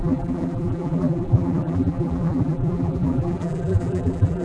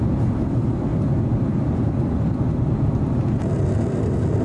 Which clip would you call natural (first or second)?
second